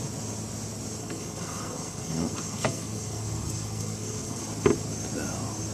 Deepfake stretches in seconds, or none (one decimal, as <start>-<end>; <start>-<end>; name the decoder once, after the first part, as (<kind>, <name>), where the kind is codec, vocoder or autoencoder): 1.0-4.4 (codec, SNAC)